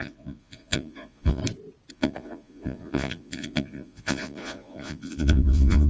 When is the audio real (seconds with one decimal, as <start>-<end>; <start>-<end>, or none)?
1.4-1.9